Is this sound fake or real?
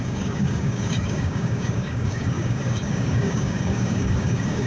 fake